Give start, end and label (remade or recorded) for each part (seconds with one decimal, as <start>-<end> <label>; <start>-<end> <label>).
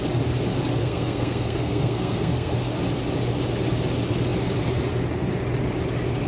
0.0-0.8 recorded; 0.8-2.5 remade; 2.5-6.3 recorded